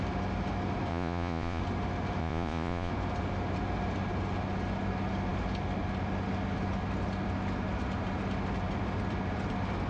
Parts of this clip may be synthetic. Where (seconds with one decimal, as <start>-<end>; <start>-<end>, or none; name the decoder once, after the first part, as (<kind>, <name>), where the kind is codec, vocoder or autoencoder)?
0.9-1.6 (vocoder, Vocos); 2.2-2.9